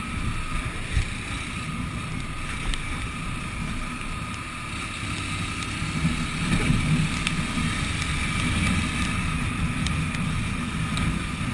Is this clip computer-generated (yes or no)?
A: no